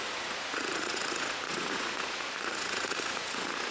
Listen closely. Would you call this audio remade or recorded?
remade